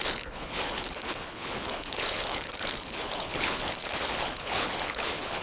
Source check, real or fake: fake